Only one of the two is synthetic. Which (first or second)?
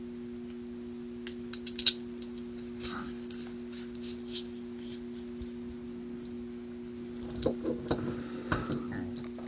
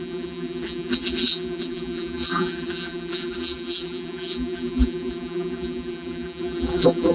second